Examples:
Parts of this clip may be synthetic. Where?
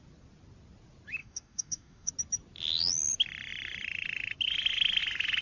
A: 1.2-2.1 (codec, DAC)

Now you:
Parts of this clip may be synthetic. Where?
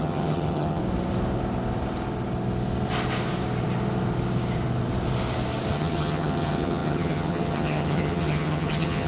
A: 0.0-0.8 (vocoder, HiFi-GAN); 5.7-9.1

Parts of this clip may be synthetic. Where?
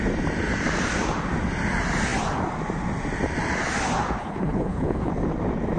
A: 4.2-5.1 (codec, HILCodec)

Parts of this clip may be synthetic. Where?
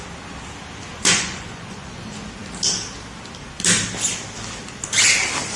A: 0.9-2.0 (vocoder, Vocos)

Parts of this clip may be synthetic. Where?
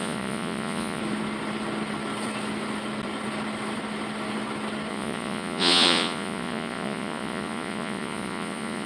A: 0.0-1.0 (vocoder, Vocos); 4.9-8.9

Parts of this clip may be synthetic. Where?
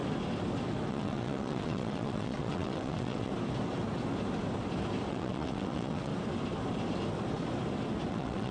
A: 0.9-3.3 (vocoder, WaveNeXt); 5.1-6.1; 8.1-8.5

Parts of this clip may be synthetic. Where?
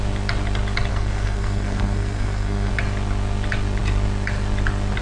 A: 0.9-2.7 (codec, SNAC)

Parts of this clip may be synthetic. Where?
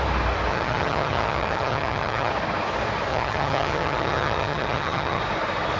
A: 0.5-2.3 (vocoder, HiFi-GAN); 3.1-5.2